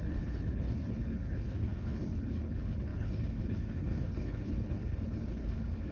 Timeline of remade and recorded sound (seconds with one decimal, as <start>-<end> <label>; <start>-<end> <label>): 0.0-5.9 remade